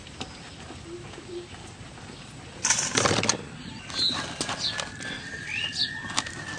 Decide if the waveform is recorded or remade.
recorded